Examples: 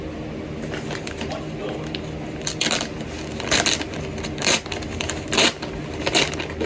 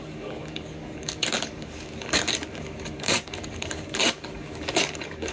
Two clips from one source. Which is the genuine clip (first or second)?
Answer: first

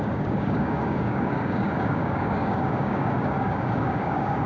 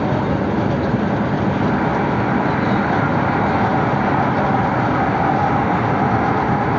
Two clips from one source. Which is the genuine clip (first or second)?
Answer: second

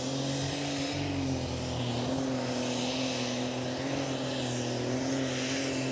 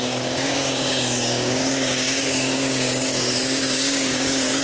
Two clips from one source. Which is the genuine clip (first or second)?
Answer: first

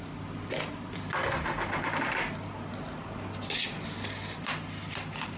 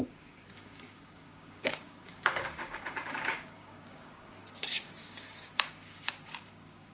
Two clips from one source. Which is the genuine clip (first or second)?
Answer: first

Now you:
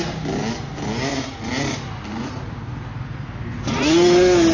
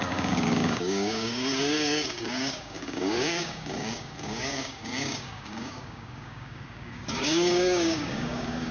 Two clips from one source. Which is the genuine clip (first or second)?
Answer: first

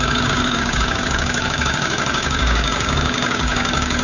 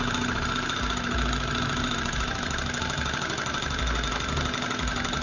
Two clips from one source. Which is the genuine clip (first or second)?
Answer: second